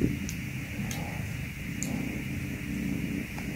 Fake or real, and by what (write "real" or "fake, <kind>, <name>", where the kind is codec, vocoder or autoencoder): real